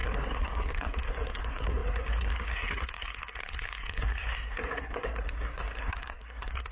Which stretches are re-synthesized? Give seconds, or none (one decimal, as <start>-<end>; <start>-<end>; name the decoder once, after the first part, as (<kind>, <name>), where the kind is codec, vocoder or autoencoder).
0.0-6.7 (codec, SNAC)